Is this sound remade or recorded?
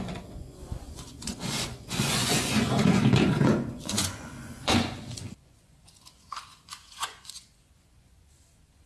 remade